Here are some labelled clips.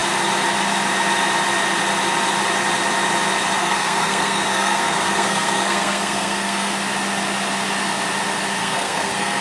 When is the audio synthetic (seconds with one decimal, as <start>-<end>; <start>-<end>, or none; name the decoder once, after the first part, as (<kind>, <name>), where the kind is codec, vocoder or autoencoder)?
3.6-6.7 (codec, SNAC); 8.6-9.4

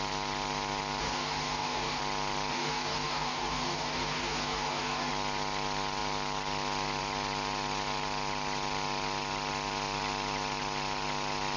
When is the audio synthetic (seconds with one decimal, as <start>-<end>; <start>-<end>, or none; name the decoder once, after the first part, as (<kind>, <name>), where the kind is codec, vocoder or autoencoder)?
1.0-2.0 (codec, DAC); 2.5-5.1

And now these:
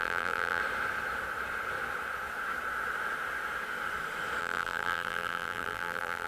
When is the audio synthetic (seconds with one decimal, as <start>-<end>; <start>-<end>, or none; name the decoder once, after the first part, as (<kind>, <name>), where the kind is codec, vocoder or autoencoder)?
0.0-0.6 (vocoder, BigVGAN v2); 4.4-6.3

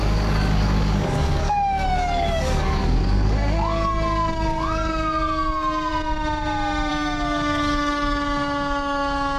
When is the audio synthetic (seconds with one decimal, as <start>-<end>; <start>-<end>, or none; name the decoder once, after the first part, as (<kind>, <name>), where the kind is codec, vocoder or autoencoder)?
0.0-5.9 (codec, DAC); 6.9-9.4

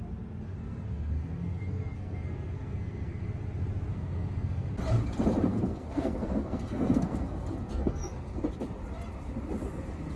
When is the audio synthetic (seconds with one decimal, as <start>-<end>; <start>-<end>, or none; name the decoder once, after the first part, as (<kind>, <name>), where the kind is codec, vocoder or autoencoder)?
0.5-3.3 (codec, SNAC); 3.9-4.7; 5.5-8.4

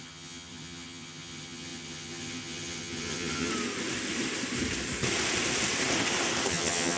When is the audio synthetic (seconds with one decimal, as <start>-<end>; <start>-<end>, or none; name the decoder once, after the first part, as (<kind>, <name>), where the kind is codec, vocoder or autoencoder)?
0.0-3.5 (vocoder, HiFi-GAN); 6.5-7.0

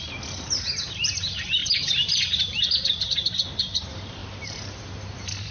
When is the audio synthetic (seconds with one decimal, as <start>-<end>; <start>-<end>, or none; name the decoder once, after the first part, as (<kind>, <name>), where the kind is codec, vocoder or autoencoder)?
1.6-2.6 (vocoder, BigVGAN v2); 4.2-5.5

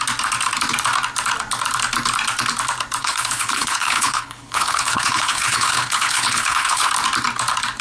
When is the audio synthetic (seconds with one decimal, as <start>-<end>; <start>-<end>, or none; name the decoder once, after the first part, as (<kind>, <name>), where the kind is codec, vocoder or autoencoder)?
3.0-6.9 (codec, HILCodec)